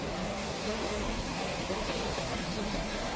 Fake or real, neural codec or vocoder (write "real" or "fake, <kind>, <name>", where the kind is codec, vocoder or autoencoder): fake, codec, SNAC